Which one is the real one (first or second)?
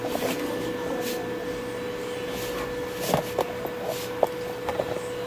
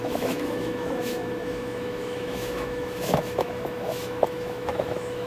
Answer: first